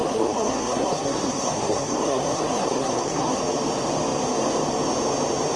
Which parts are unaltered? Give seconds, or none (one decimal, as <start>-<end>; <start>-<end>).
3.4-5.6